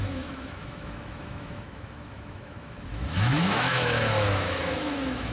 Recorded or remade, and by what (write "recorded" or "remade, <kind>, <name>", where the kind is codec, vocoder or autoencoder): remade, autoencoder, DAC-VAE